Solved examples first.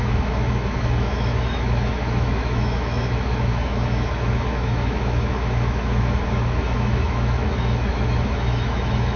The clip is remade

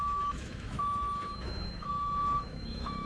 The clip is remade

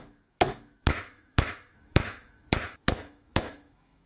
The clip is remade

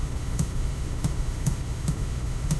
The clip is remade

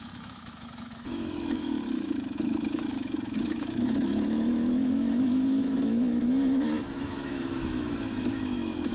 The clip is remade